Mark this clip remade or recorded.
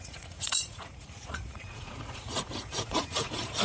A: remade